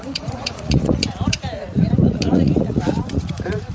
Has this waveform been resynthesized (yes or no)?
yes